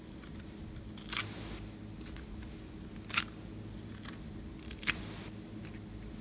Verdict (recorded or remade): recorded